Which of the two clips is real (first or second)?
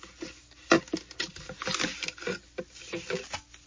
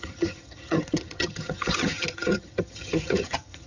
first